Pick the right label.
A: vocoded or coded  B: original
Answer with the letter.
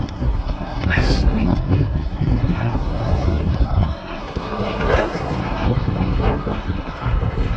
A